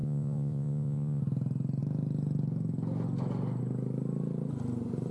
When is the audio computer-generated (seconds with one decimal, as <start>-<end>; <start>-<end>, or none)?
0.0-1.2